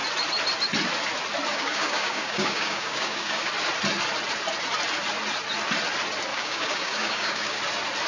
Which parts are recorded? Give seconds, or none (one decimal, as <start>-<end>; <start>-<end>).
0.0-1.5; 3.5-6.3; 7.6-8.1